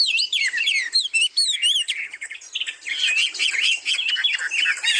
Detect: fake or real real